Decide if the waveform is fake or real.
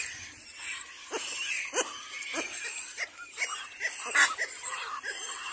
real